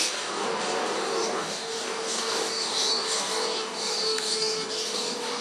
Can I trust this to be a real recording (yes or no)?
no